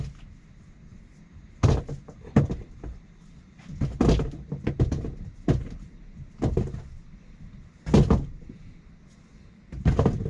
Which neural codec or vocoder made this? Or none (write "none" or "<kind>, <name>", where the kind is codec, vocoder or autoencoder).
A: none